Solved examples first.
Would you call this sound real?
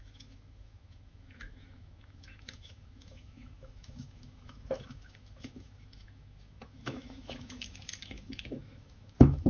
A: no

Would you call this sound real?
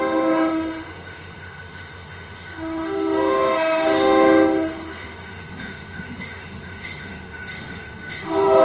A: no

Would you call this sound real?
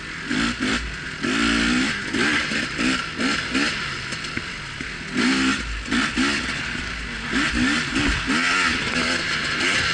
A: yes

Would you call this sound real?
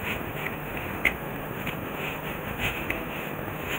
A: no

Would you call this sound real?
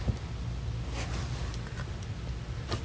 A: yes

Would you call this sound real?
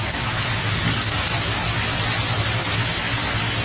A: yes